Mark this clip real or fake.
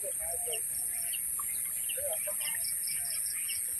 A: real